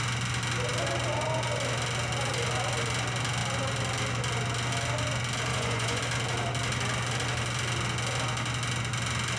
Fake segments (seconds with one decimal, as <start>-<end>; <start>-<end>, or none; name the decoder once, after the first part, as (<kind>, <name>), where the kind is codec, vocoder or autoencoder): 5.5-6.0 (vocoder, Vocos)